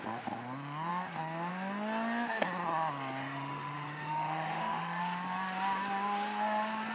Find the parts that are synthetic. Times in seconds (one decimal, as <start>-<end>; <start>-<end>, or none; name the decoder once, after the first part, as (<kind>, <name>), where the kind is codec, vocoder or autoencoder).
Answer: 3.2-5.0 (autoencoder, DAC-VAE)